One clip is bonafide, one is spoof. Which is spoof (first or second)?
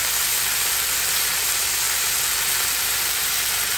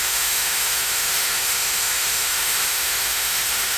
second